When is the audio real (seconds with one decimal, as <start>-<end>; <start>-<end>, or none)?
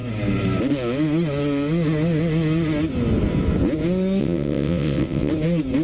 0.0-4.2; 5.3-5.8